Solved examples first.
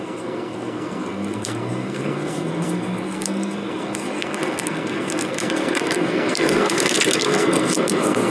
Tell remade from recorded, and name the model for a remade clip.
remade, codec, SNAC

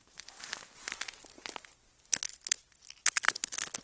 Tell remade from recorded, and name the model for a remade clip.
recorded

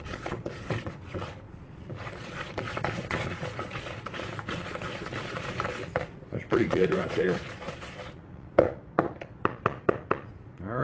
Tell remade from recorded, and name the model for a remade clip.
remade, vocoder, Vocos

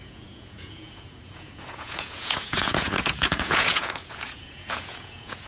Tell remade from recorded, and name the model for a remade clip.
remade, vocoder, Vocos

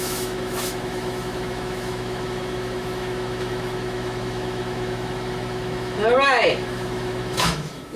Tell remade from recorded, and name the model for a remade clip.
remade, autoencoder, DAC-VAE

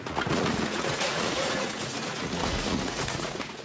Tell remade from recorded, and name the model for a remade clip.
remade, vocoder, Vocos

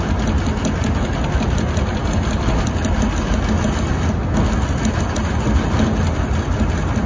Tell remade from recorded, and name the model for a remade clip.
recorded